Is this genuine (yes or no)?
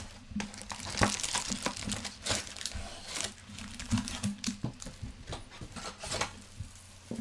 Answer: yes